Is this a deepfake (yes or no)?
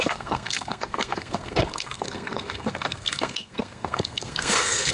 yes